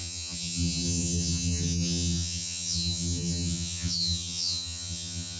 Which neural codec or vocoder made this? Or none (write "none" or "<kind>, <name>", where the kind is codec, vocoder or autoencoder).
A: vocoder, HiFi-GAN